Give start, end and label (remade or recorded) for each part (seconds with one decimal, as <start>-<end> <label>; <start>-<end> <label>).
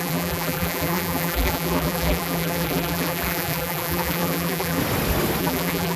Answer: 0.0-4.8 remade; 4.8-5.4 recorded; 5.4-6.0 remade